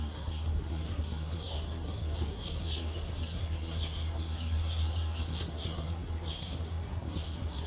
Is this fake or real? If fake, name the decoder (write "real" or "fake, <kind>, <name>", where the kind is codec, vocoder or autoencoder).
fake, codec, SNAC